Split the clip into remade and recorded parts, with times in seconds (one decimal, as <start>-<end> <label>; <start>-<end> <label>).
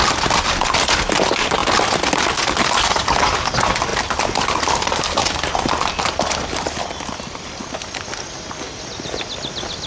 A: 0.0-0.6 remade; 0.6-5.2 recorded; 5.2-7.1 remade; 7.1-9.9 recorded